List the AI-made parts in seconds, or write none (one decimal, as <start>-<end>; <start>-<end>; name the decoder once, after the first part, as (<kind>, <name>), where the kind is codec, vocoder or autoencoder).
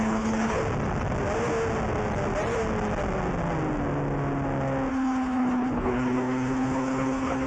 0.0-0.6 (codec, HILCodec); 4.9-7.5